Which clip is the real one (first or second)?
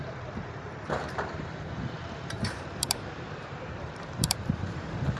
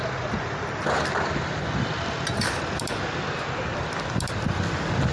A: second